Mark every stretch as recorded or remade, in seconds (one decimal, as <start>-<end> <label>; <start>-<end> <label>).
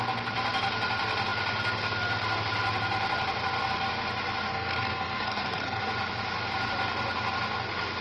0.0-4.5 recorded; 4.5-5.8 remade; 5.8-8.0 recorded